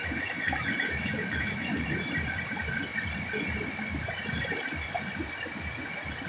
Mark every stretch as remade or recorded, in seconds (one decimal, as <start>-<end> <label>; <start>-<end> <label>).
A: 0.0-1.9 remade; 1.9-6.3 recorded